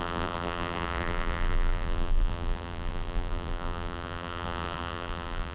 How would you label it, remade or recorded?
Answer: remade